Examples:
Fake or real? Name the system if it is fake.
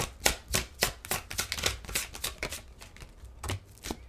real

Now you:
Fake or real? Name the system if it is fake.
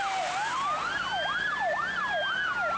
real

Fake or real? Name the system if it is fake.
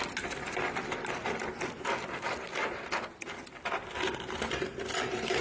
real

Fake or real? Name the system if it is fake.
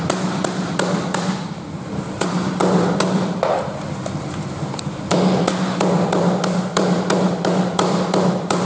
fake, vocoder, BigVGAN v2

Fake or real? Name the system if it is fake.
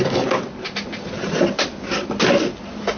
real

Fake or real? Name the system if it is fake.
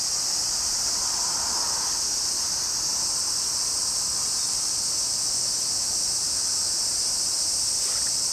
real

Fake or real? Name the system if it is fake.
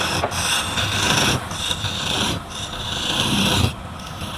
fake, vocoder, BigVGAN v2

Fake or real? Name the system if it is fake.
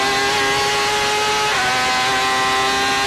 real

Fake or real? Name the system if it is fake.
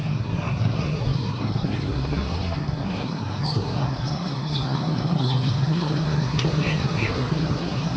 fake, codec, SNAC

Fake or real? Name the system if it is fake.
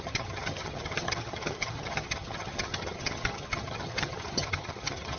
fake, vocoder, HiFi-GAN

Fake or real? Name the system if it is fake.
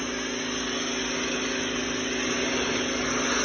real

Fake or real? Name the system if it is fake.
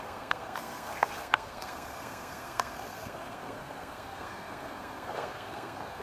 fake, codec, SNAC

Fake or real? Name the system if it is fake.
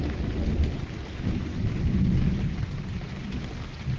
real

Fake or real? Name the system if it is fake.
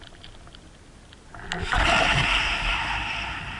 real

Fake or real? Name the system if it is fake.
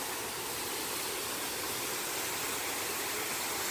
real